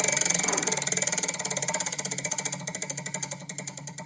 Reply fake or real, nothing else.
real